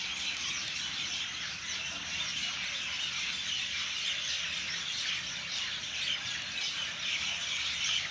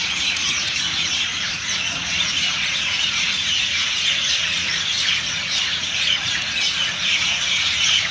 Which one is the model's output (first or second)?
second